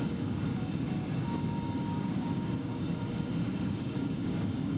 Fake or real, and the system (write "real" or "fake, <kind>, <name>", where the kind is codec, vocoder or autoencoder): fake, codec, DAC